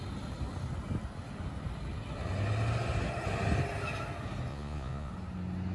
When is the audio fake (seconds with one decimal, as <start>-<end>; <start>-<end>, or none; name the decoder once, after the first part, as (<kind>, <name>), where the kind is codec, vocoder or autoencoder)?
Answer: 4.5-5.1 (vocoder, Vocos)